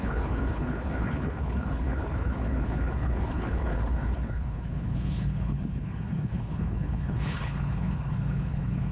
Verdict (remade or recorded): remade